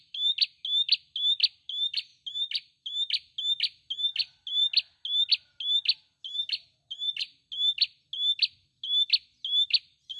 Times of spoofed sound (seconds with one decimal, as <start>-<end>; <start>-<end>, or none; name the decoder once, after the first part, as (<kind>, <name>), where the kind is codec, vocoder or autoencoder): none